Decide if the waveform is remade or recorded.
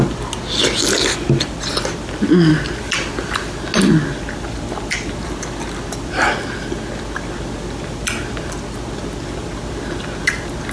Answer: recorded